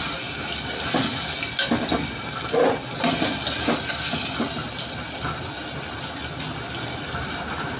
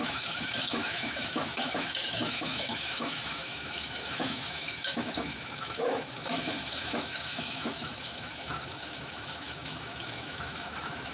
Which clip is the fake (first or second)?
second